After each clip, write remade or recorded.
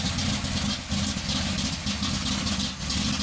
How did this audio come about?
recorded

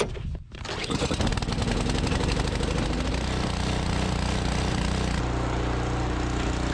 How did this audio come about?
recorded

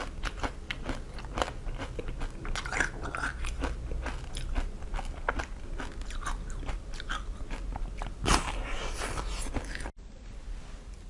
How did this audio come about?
recorded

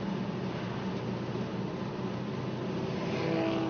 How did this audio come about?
recorded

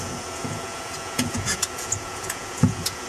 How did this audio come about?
remade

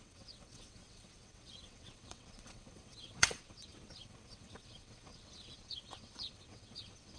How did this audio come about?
remade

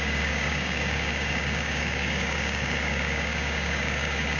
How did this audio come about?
remade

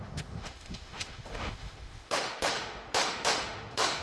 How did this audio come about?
remade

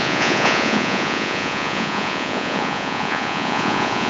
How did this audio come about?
remade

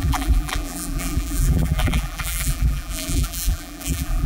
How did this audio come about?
remade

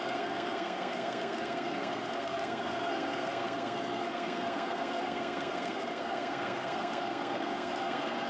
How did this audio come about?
remade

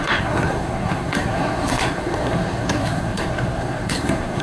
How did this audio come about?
remade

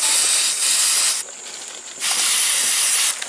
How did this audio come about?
recorded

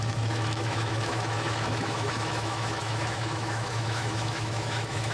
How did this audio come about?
remade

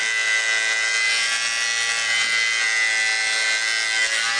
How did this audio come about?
recorded